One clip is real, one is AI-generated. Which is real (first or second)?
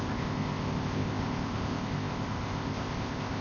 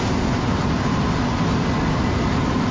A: second